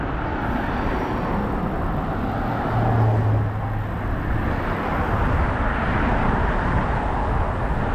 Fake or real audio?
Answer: real